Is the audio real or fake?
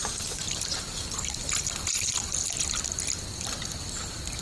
real